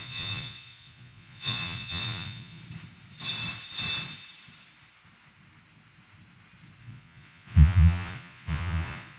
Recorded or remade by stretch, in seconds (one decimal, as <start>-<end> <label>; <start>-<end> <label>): 0.0-2.6 remade; 2.6-6.8 recorded; 6.8-9.2 remade